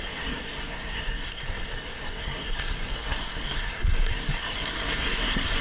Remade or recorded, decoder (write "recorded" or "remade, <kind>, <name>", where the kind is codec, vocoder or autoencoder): remade, codec, SNAC